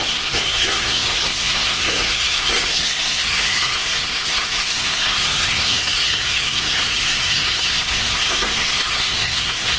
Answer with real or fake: fake